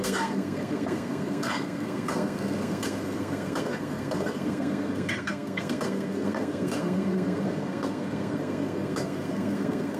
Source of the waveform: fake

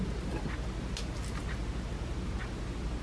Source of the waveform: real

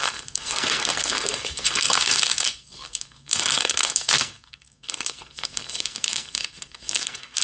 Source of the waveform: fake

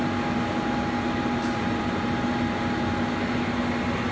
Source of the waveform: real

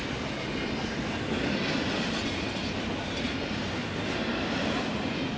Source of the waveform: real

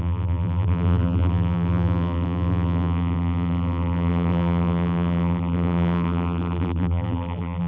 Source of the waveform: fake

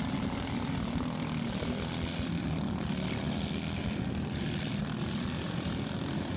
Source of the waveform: real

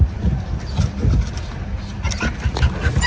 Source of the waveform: real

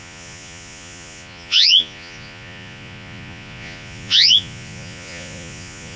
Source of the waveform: fake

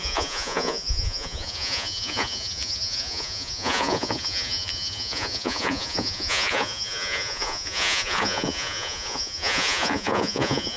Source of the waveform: fake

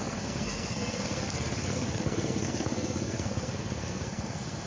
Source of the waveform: fake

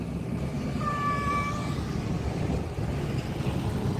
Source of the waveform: real